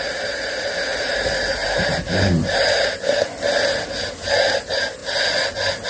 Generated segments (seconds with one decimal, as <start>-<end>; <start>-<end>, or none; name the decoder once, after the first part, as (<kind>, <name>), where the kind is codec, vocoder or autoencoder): 0.0-5.0 (vocoder, BigVGAN v2)